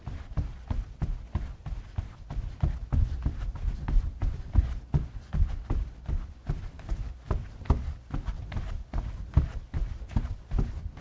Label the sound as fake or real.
real